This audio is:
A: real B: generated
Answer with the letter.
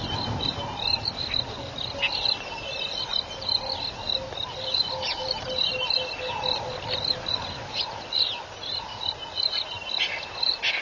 A